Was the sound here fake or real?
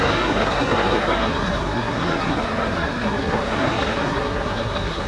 fake